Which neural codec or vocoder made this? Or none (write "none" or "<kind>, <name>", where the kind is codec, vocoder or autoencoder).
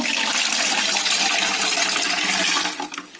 none